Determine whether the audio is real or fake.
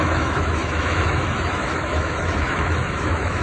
fake